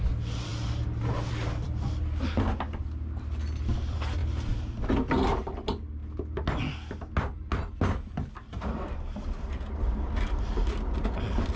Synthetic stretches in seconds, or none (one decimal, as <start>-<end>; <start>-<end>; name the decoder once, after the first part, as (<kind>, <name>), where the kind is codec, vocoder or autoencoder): none

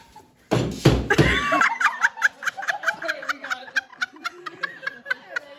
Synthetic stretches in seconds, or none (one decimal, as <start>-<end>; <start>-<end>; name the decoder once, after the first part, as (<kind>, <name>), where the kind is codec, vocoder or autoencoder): none

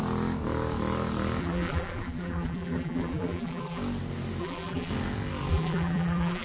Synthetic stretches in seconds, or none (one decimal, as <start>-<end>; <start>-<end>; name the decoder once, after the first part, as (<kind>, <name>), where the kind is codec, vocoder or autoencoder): 1.4-3.8 (vocoder, BigVGAN v2); 4.4-4.9; 5.5-6.4

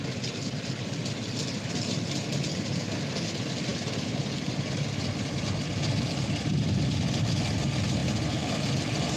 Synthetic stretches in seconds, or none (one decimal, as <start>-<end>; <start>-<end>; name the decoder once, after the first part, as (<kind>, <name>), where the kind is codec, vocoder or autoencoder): none

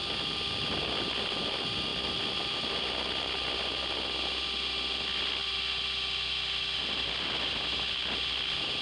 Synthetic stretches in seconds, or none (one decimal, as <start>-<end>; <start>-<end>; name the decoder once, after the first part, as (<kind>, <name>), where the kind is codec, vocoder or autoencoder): 1.9-2.7 (vocoder, BigVGAN v2)

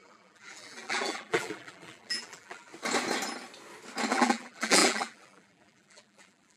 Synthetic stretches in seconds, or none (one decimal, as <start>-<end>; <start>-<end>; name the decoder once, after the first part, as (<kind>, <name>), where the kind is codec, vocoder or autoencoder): 0.0-2.7 (vocoder, BigVGAN v2); 4.1-6.6

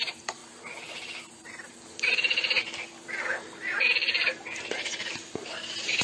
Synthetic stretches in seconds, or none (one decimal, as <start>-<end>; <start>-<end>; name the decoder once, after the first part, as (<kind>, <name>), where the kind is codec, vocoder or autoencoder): 0.0-6.0 (vocoder, BigVGAN v2)

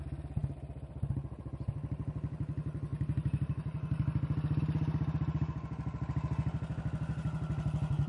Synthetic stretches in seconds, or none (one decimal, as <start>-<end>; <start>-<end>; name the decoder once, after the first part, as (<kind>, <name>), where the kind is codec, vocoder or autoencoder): none